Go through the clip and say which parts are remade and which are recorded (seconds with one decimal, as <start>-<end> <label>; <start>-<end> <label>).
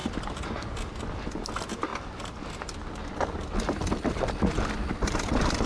0.0-5.7 recorded